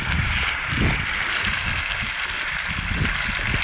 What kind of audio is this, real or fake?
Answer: real